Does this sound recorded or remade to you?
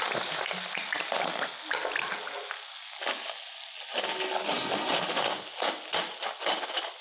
recorded